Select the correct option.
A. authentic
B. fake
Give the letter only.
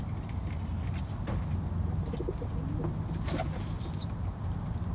A